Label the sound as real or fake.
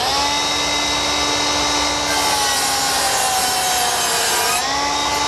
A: real